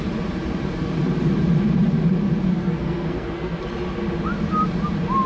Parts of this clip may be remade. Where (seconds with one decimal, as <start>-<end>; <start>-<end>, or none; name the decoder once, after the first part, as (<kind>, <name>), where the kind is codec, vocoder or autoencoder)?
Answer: 2.5-3.6 (codec, SNAC)